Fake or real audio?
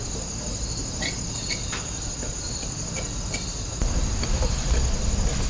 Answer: real